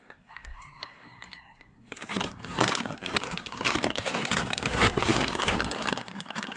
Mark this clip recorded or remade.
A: remade